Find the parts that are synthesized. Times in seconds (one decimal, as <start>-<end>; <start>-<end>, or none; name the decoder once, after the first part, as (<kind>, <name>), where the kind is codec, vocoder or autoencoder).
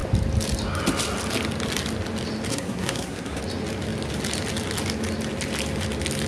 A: 2.5-3.4 (codec, SNAC)